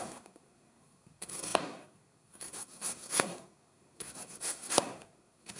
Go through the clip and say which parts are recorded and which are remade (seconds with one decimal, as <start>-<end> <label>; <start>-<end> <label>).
0.0-5.6 remade